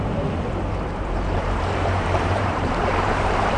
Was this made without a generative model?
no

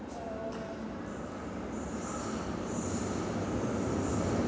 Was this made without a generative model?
yes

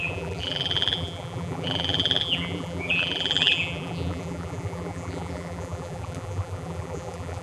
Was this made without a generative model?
no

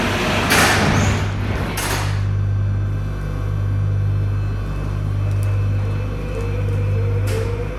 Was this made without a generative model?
yes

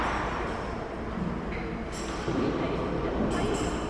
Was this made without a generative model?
yes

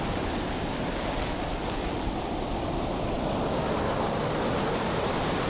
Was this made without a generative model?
yes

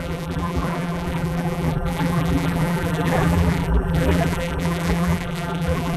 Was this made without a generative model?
no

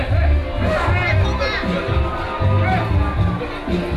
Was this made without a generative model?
yes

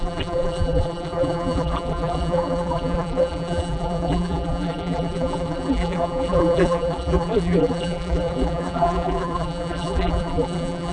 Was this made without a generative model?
no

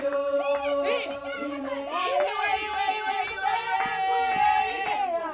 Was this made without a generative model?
yes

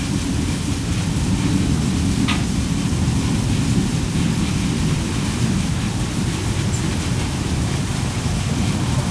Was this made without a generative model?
no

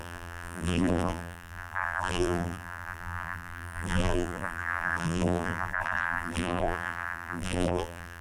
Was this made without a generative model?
no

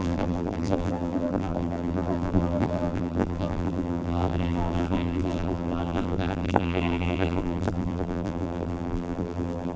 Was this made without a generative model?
no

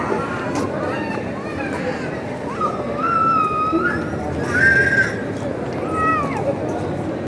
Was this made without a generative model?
yes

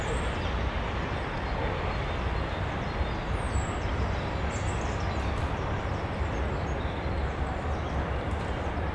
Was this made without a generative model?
yes